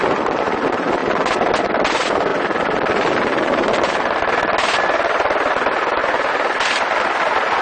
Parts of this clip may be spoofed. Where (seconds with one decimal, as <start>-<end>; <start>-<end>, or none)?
none